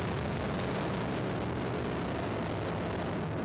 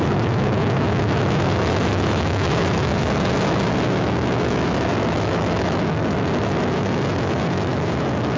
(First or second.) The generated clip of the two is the second